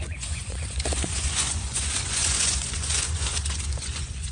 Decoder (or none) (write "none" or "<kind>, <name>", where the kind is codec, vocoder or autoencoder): vocoder, Vocos